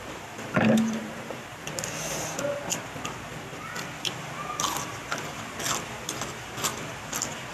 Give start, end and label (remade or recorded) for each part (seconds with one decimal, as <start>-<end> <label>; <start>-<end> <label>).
0.0-1.0 recorded; 1.0-1.6 remade; 1.6-7.5 recorded